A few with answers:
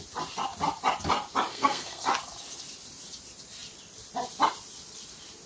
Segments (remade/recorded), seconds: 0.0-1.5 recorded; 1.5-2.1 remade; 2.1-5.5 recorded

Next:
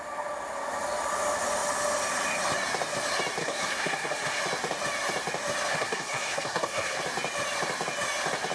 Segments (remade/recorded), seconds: 0.0-3.4 recorded; 3.4-4.4 remade; 4.4-5.7 recorded; 5.7-7.0 remade; 7.0-8.5 recorded

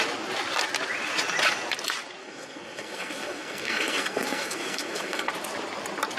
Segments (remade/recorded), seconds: 0.0-2.2 recorded; 2.2-5.3 remade; 5.3-6.2 recorded

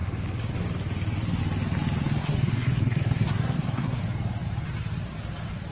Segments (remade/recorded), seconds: 0.0-2.2 recorded; 2.2-4.0 remade; 4.0-5.7 recorded